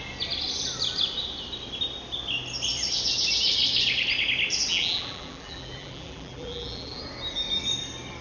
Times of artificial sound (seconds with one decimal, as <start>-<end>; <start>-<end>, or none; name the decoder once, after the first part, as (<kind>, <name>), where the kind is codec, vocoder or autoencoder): 4.7-7.0 (vocoder, BigVGAN v2)